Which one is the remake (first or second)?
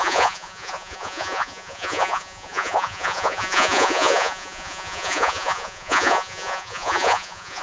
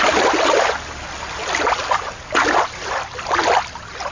first